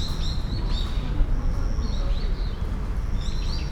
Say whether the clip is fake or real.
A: real